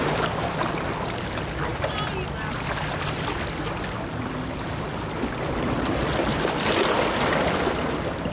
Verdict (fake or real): real